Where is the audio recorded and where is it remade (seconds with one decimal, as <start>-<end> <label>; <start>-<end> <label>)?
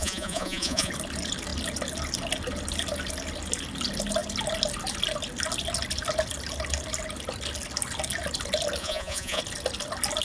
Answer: 0.0-0.9 remade; 0.9-8.8 recorded; 8.8-9.4 remade; 9.4-10.2 recorded